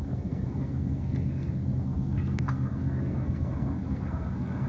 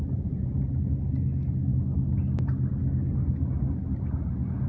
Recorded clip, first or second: second